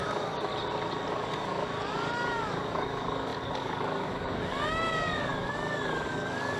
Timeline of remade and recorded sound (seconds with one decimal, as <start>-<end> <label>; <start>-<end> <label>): 0.0-0.5 remade; 0.5-1.1 recorded; 1.1-6.6 remade